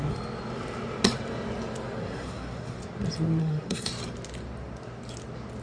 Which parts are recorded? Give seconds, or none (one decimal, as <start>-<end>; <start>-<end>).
0.0-2.0; 2.8-3.4; 3.9-5.6